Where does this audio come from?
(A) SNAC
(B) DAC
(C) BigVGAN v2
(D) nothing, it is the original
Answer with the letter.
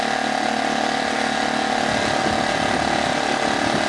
D